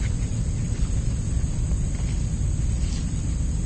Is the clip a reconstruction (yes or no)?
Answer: no